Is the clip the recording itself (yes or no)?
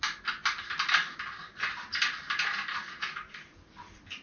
yes